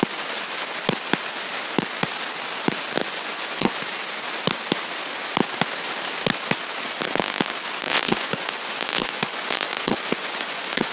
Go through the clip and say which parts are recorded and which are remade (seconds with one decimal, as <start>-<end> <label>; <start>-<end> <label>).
0.0-3.0 recorded; 3.0-3.7 remade; 3.7-7.9 recorded; 7.9-10.9 remade